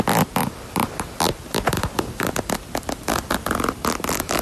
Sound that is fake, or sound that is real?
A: real